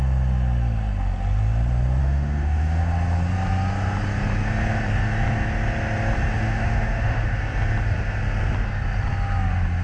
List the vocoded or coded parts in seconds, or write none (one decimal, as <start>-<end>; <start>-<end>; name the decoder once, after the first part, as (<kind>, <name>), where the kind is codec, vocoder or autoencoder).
2.0-2.8 (autoencoder, DAC-VAE); 6.3-7.4